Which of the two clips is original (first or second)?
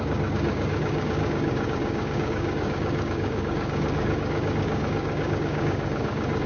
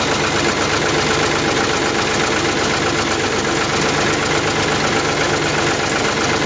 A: second